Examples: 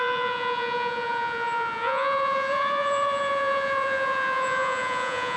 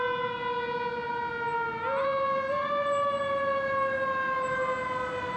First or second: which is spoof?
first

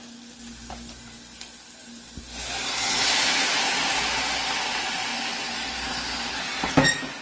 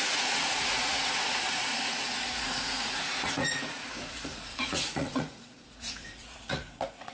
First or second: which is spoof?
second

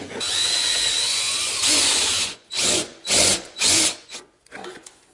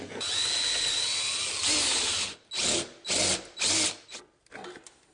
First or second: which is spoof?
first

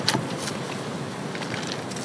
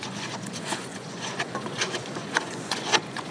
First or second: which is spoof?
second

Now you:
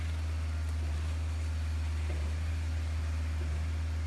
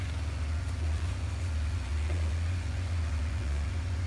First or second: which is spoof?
second